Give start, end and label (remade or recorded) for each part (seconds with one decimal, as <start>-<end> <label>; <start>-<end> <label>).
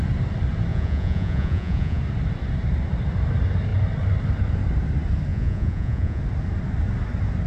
0.0-0.7 recorded; 0.7-2.0 remade; 2.0-5.3 recorded; 5.3-6.2 remade; 6.2-7.5 recorded